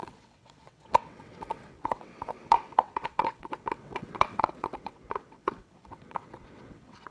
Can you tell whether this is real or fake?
fake